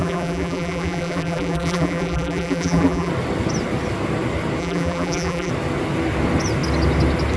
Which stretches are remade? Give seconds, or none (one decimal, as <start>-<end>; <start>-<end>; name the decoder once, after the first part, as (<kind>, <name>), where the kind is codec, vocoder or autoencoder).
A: 0.0-3.1 (vocoder, BigVGAN v2); 4.6-5.5